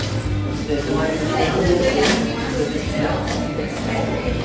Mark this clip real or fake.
real